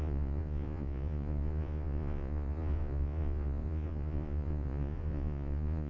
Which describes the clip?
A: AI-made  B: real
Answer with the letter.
A